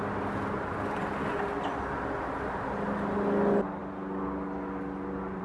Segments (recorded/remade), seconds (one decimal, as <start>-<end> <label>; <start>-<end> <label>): 0.0-5.4 recorded